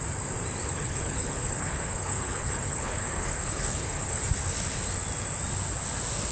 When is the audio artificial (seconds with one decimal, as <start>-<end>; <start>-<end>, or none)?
0.6-4.2